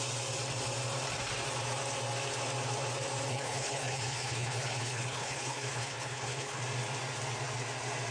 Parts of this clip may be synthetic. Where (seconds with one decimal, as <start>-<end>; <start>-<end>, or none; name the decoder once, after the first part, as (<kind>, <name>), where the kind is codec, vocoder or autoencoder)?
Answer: 3.3-6.6 (codec, HILCodec)